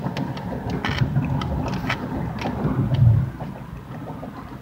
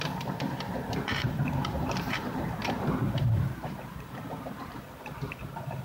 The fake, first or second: second